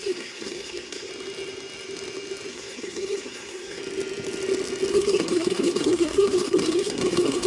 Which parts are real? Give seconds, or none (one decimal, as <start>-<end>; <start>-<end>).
1.1-2.5; 3.8-4.9